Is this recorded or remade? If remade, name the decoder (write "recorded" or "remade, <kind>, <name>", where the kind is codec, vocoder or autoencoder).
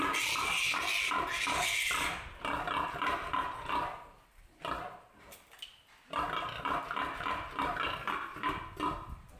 recorded